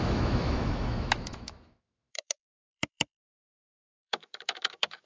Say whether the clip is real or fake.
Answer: fake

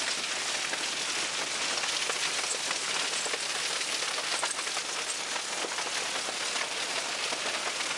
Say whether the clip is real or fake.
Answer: real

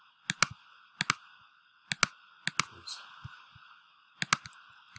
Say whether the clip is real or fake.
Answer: real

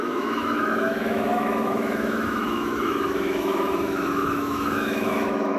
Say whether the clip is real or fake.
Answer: fake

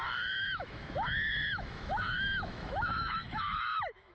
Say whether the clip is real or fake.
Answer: fake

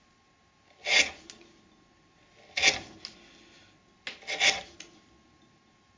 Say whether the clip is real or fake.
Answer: real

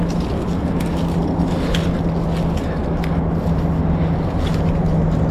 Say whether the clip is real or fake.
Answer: real